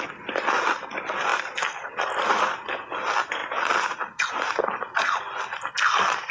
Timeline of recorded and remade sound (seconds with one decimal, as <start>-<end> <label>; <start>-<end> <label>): 0.0-6.3 recorded